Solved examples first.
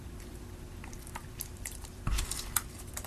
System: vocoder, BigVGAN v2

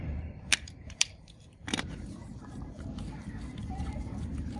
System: vocoder, BigVGAN v2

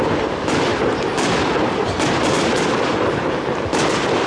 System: none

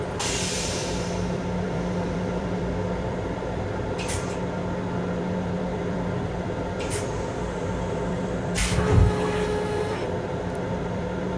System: vocoder, BigVGAN v2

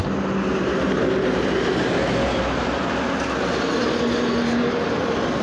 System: none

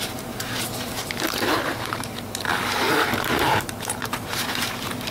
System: vocoder, BigVGAN v2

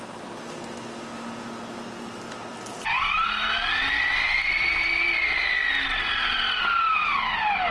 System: none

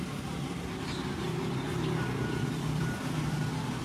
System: vocoder, BigVGAN v2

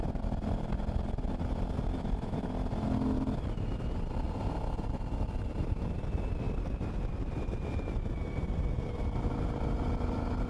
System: none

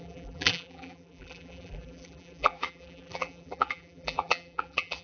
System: vocoder, BigVGAN v2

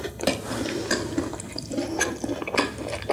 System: vocoder, BigVGAN v2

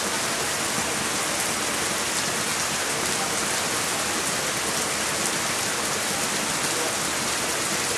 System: none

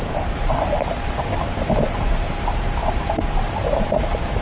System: vocoder, BigVGAN v2